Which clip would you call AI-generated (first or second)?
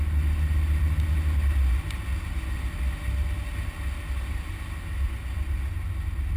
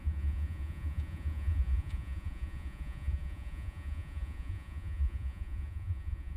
second